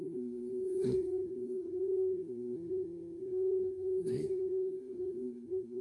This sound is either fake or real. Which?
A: fake